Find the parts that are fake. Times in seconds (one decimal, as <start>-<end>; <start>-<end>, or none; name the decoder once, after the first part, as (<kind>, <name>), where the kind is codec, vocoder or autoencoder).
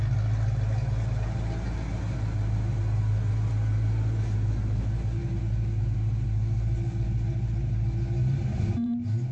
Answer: none